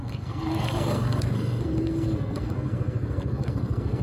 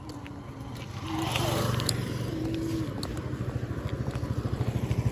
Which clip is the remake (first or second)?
first